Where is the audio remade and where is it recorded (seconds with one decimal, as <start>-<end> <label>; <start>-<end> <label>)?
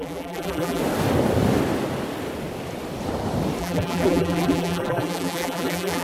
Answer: 0.0-0.8 remade; 0.8-3.6 recorded; 3.6-6.0 remade